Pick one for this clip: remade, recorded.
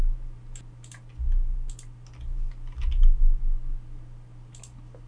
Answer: recorded